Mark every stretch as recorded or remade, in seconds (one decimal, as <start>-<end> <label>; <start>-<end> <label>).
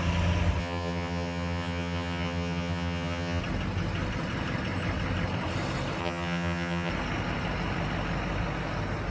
0.0-0.6 recorded; 0.6-3.4 remade; 3.4-6.0 recorded; 6.0-6.9 remade; 6.9-9.1 recorded